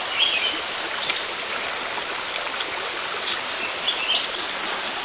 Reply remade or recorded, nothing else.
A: recorded